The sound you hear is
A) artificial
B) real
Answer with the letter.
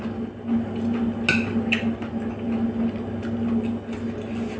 B